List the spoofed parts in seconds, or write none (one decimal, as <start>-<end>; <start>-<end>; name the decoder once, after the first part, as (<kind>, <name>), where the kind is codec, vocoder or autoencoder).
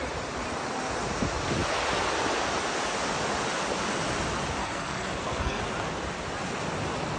4.6-5.6 (codec, SNAC)